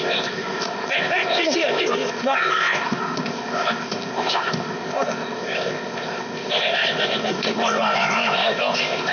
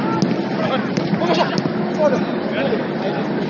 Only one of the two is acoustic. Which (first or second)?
second